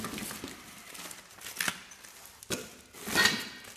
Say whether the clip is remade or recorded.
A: recorded